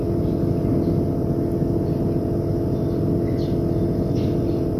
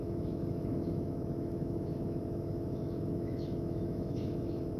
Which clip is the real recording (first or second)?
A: first